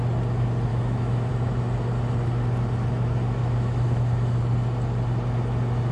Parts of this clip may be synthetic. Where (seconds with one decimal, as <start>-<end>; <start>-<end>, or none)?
0.7-1.3; 3.4-4.4